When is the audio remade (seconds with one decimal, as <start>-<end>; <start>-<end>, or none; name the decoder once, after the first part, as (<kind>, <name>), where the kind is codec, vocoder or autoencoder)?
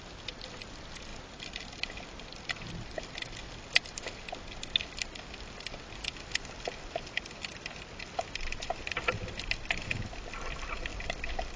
none